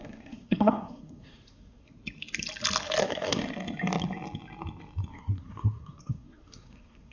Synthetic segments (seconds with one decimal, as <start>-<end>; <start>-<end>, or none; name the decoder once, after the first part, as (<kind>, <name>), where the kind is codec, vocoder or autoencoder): 0.0-2.0 (codec, SNAC); 3.0-3.4; 5.1-7.1